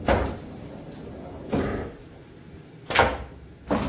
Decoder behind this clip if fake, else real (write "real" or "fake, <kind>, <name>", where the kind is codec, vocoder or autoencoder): real